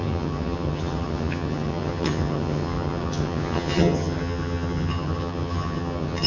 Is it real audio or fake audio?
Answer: fake